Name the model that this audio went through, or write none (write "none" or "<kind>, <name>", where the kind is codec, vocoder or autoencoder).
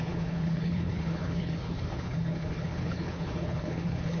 codec, HILCodec